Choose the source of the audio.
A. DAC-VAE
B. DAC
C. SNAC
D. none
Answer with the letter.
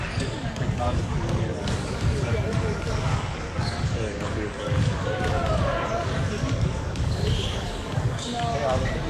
B